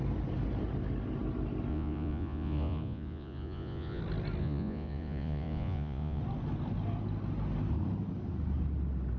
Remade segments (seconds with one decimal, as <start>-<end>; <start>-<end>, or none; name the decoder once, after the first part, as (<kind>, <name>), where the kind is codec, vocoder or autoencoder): 1.7-4.0 (vocoder, Vocos); 4.4-6.2